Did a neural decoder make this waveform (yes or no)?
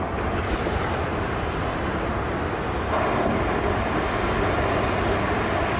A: no